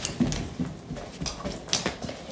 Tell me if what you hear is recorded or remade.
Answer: recorded